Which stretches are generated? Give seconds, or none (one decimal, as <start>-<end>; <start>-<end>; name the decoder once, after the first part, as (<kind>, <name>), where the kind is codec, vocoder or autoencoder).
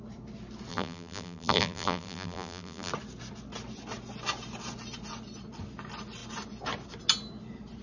0.7-2.9 (vocoder, BigVGAN v2)